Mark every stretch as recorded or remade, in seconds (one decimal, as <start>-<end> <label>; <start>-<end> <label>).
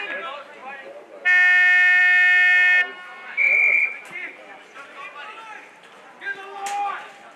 0.0-7.4 recorded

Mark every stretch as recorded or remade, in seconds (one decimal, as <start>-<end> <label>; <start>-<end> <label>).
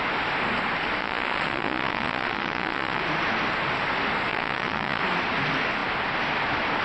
0.0-1.0 recorded; 1.0-3.0 remade; 3.0-4.3 recorded; 4.3-5.0 remade; 5.0-6.8 recorded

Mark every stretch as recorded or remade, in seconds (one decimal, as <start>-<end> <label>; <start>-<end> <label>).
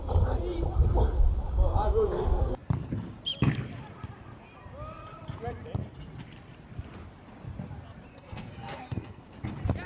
0.0-8.1 recorded; 8.1-9.2 remade; 9.2-9.9 recorded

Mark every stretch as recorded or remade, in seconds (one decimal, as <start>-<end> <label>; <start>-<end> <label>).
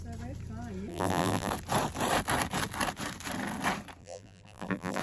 0.0-0.9 recorded; 0.9-1.5 remade; 1.5-4.0 recorded; 4.0-5.0 remade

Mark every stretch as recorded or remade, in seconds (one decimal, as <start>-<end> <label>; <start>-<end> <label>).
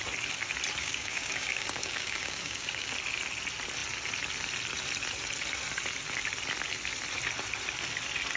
0.0-0.8 recorded; 0.8-2.9 remade; 2.9-8.4 recorded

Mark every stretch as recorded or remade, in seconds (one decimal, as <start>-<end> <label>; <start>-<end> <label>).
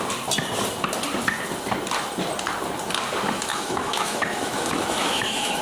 0.0-3.5 recorded; 3.5-5.6 remade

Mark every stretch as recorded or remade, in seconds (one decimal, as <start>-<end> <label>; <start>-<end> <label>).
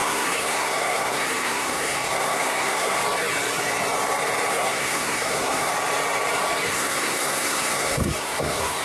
0.0-3.0 remade; 3.0-4.5 recorded; 4.5-5.7 remade; 5.7-6.7 recorded; 6.7-8.8 remade